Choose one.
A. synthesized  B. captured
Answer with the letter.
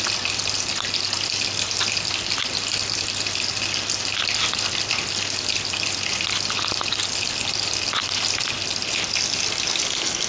B